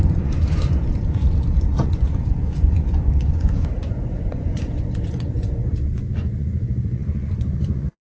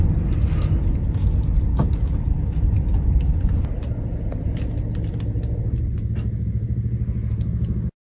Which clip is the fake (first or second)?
first